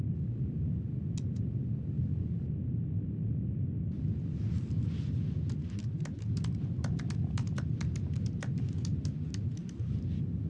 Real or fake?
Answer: real